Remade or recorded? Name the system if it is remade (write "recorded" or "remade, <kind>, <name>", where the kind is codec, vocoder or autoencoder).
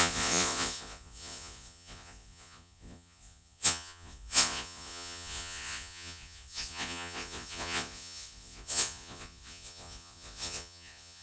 remade, vocoder, Vocos